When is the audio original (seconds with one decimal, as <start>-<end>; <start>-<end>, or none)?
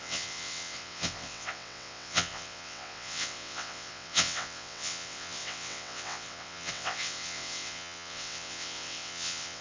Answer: none